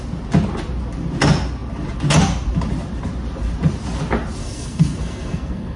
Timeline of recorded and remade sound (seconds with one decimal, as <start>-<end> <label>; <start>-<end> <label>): 0.0-4.4 recorded; 4.4-5.8 remade